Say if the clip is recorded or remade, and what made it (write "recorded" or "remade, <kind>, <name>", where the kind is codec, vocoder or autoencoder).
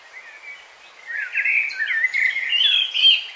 recorded